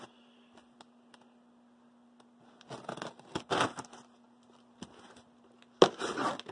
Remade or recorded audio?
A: recorded